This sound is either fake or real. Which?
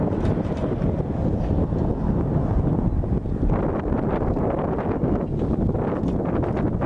real